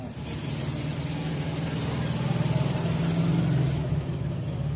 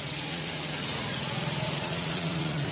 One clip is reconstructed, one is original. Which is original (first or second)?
first